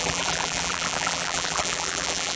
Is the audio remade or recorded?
remade